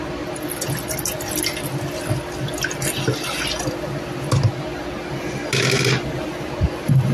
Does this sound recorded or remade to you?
recorded